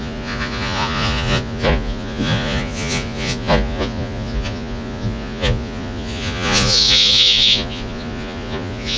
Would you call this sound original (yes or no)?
no